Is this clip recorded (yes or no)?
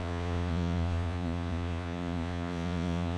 no